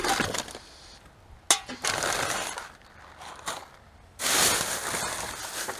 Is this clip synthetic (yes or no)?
no